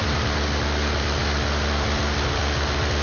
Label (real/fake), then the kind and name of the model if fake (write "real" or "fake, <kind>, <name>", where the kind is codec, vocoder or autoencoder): real